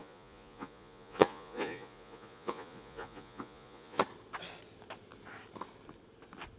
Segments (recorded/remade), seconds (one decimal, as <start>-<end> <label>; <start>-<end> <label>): 0.0-4.0 remade; 4.0-6.6 recorded